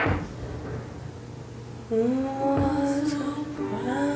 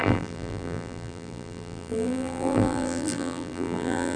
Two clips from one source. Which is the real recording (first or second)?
first